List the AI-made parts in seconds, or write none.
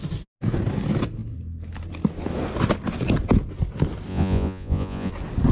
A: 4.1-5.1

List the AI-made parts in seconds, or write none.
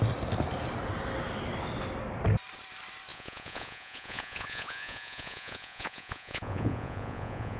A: 3.1-7.6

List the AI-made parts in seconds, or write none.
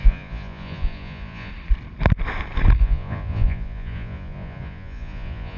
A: 0.0-1.5; 2.8-5.6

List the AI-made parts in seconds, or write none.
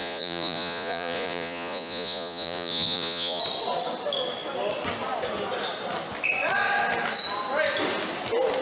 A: 0.0-3.4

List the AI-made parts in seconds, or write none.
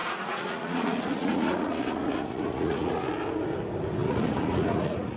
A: 0.0-3.1; 4.0-5.2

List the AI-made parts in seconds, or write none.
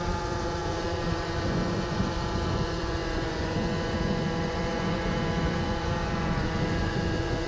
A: 0.0-7.5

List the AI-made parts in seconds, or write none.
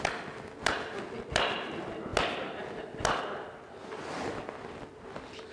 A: none